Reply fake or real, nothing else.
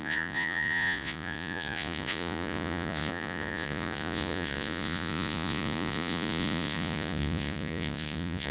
fake